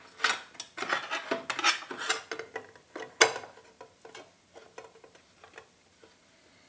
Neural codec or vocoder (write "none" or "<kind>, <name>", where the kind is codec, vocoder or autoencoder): none